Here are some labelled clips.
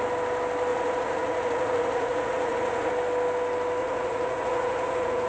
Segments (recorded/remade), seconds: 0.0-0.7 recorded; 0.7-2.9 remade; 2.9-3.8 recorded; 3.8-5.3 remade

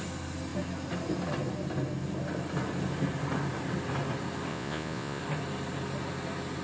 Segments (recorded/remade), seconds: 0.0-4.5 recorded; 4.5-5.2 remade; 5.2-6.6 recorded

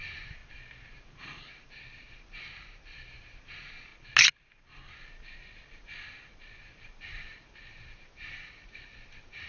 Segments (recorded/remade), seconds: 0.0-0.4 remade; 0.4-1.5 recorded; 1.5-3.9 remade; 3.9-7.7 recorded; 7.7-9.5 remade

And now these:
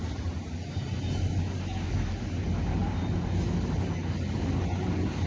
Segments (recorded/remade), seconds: 0.0-5.3 recorded

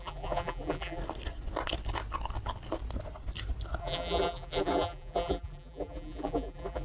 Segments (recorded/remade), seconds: 0.0-1.0 remade; 1.0-3.8 recorded; 3.8-6.8 remade

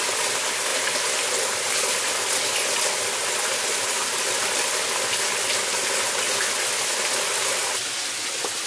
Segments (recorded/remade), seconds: 0.0-8.7 recorded